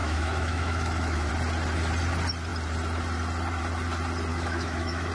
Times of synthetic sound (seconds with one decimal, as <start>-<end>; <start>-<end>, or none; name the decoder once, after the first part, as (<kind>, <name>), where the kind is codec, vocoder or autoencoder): 0.0-1.3 (autoencoder, DAC-VAE); 4.3-5.1